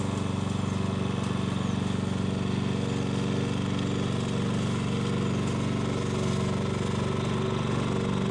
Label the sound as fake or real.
real